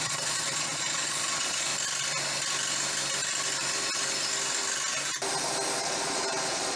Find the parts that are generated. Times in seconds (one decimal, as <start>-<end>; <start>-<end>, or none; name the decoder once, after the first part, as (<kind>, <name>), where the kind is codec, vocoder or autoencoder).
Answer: 0.0-1.7 (vocoder, Vocos); 5.8-6.8